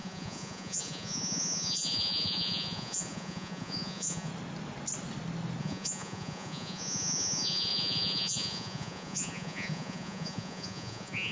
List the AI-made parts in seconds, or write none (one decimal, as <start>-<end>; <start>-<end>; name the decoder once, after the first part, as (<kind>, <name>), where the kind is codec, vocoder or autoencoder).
0.0-4.3 (vocoder, Vocos); 5.6-11.3